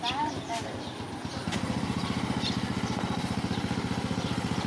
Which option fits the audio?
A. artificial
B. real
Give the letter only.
B